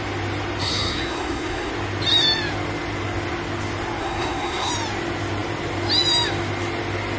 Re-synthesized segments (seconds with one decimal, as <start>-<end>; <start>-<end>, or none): 0.6-1.7; 4.0-4.7